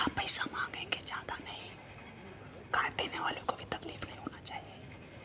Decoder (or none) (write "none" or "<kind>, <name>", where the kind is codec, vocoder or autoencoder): none